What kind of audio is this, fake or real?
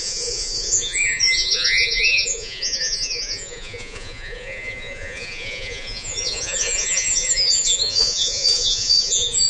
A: fake